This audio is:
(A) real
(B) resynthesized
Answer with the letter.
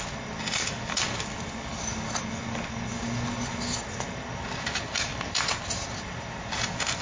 A